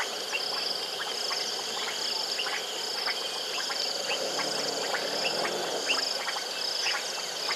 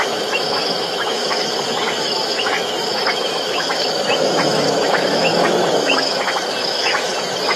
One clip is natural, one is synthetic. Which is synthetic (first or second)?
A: second